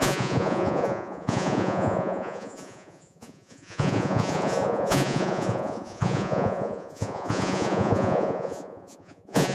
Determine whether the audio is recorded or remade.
remade